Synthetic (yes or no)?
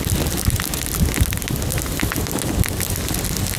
no